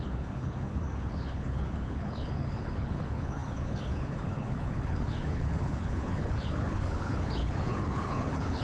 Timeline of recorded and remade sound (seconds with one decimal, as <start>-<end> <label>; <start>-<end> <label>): 0.0-8.6 remade